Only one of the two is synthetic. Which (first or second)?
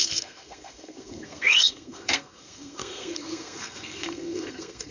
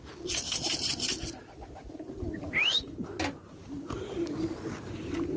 first